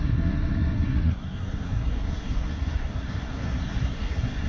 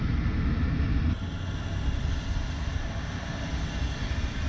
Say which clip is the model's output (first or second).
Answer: first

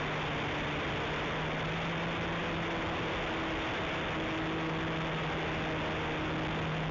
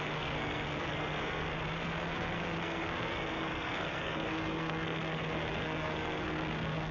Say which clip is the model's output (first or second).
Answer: second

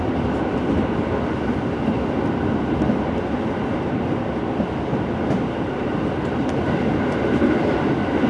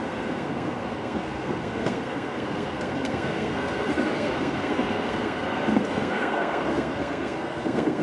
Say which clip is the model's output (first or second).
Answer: second